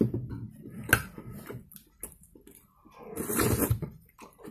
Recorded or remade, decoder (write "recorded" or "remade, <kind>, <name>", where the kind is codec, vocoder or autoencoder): recorded